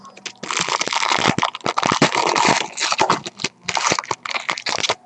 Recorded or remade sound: recorded